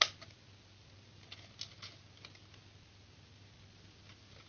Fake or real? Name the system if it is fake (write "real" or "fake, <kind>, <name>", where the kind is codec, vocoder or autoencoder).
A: real